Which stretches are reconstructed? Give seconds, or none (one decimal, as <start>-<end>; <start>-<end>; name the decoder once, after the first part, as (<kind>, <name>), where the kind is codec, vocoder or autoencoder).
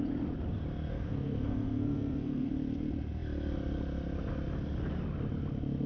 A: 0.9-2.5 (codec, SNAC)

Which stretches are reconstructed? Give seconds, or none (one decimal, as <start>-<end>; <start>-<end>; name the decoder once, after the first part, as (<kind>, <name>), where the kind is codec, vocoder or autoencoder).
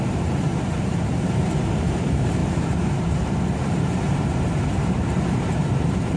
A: 0.0-2.4 (vocoder, BigVGAN v2); 3.0-6.2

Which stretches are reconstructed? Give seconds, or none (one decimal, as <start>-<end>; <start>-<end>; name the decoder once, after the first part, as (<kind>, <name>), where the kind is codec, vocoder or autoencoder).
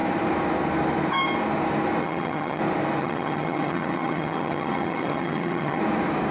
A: 2.0-2.6 (vocoder, HiFi-GAN); 3.0-5.8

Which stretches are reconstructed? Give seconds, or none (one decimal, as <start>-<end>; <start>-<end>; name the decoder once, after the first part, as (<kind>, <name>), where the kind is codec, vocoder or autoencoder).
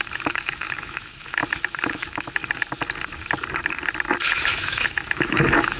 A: 0.0-1.4 (autoencoder, DAC-VAE); 1.9-2.4; 4.5-5.8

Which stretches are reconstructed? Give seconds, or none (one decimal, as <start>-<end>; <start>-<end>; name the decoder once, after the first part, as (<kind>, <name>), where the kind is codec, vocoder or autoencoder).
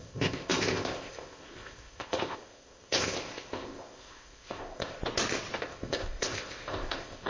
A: 0.0-5.0 (codec, ZipCodec); 5.6-7.3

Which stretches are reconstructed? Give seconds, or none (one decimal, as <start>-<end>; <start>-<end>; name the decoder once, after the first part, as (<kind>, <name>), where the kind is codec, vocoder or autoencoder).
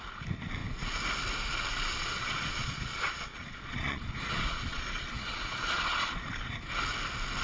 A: 1.9-6.3 (vocoder, Vocos)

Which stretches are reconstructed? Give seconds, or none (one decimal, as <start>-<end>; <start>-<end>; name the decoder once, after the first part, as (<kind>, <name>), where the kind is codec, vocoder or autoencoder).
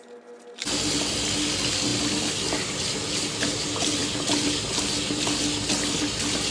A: none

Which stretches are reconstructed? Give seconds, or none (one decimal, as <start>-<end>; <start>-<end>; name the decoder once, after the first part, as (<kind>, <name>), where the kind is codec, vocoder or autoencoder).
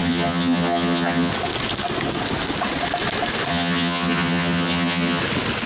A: 0.0-1.3 (vocoder, HiFi-GAN); 3.5-5.2